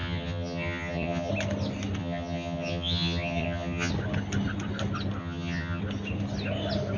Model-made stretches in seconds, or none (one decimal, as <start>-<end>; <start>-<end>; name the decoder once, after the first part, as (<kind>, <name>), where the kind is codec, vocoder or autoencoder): 0.0-1.3 (vocoder, HiFi-GAN); 2.0-3.9; 5.2-5.8